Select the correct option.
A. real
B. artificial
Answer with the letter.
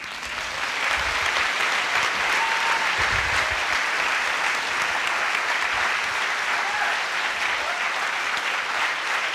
A